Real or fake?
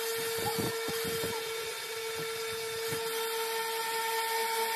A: real